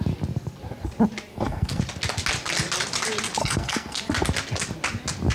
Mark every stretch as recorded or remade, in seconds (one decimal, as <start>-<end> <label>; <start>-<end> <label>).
0.0-1.3 recorded; 1.3-1.8 remade; 1.8-3.4 recorded; 3.4-4.0 remade; 4.0-5.3 recorded